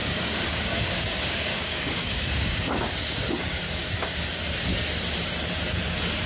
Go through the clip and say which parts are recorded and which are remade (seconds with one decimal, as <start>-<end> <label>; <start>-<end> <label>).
0.0-3.8 remade; 3.8-6.3 recorded